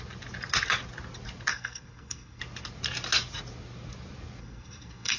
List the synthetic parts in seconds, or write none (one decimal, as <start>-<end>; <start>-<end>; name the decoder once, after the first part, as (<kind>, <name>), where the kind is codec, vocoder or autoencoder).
1.5-2.4 (codec, SNAC); 4.4-5.2